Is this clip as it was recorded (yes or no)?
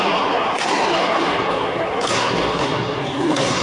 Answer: no